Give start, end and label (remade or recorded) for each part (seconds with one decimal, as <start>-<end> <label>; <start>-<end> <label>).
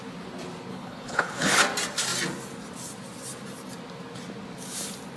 0.0-0.7 recorded; 0.7-1.6 remade; 1.6-5.2 recorded